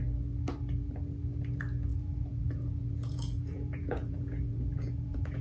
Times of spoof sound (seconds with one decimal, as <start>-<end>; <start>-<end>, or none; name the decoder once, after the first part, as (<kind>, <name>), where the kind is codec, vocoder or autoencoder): 1.9-5.4 (vocoder, Vocos)